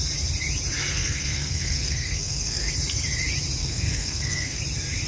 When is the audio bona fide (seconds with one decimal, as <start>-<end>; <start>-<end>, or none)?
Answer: 0.0-0.9; 2.7-3.6; 4.6-5.1